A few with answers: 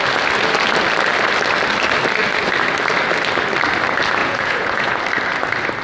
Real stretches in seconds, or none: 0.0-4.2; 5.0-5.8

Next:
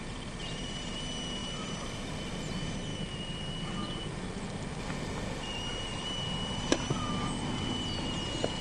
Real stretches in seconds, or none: 0.0-8.6